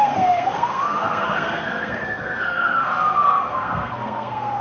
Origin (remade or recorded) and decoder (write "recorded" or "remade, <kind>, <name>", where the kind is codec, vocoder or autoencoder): remade, codec, SNAC